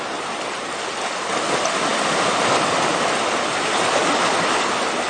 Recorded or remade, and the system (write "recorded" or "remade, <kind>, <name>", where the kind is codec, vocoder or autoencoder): recorded